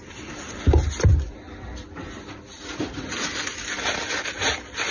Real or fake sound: real